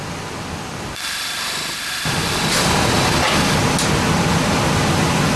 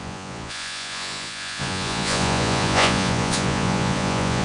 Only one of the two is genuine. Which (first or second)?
first